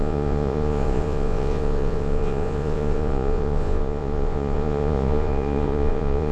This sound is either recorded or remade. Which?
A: remade